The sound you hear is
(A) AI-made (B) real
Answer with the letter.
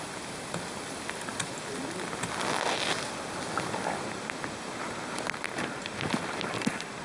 B